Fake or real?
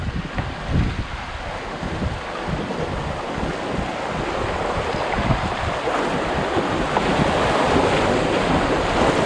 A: real